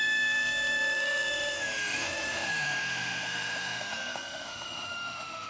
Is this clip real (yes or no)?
no